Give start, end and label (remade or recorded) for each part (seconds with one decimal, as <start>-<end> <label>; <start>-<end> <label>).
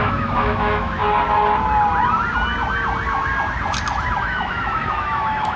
0.0-1.0 remade; 1.0-4.2 recorded; 4.2-5.6 remade